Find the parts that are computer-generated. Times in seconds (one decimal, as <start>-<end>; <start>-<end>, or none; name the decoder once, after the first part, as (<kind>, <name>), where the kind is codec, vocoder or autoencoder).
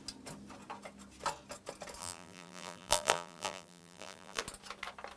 2.0-4.4 (vocoder, BigVGAN v2)